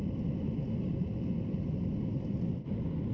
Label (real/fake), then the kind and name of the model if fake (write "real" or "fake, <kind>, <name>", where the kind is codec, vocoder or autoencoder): real